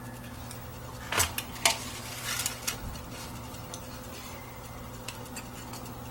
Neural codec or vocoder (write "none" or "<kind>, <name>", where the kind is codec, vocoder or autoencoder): none